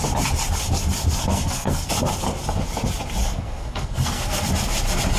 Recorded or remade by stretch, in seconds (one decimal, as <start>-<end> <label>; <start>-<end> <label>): 0.0-1.2 recorded; 1.2-1.9 remade; 1.9-3.2 recorded; 3.2-4.5 remade; 4.5-5.2 recorded